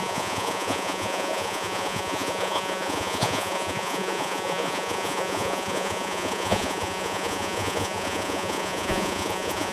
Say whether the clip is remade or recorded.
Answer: remade